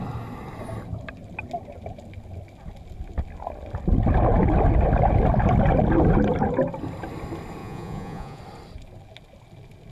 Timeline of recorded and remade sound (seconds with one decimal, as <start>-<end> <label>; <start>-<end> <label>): 0.0-7.6 recorded; 7.6-8.4 remade; 8.4-9.9 recorded